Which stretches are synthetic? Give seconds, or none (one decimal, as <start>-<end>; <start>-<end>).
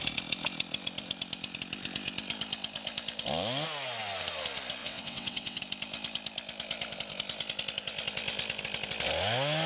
4.8-5.6